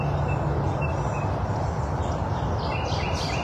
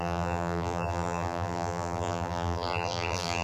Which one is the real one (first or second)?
first